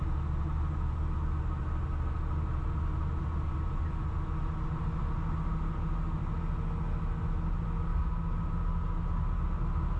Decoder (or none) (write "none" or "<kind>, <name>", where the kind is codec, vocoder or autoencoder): none